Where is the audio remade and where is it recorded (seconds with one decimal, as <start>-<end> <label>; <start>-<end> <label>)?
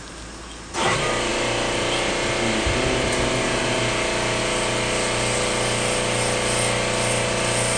0.0-7.8 recorded